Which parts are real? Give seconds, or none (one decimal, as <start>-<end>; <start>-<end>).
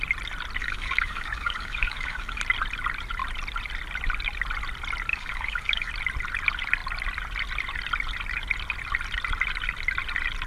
0.0-0.6; 2.4-5.1; 5.9-10.5